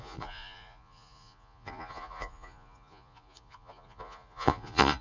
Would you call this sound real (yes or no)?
no